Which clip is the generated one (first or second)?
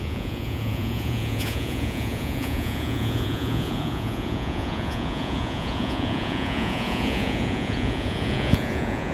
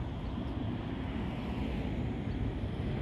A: first